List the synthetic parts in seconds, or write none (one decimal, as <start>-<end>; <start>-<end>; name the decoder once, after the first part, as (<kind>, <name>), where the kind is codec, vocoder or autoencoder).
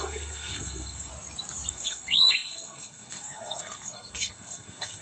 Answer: 0.0-1.1 (codec, SNAC); 1.7-5.0